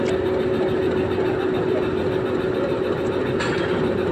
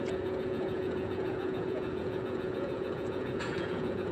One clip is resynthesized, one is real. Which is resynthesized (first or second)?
second